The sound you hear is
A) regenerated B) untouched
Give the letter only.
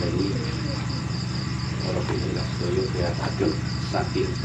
A